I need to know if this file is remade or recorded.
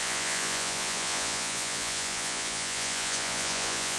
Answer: remade